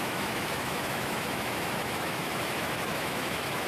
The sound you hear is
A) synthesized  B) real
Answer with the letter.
A